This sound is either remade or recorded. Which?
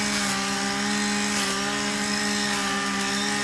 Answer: recorded